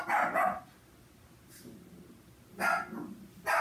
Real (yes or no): yes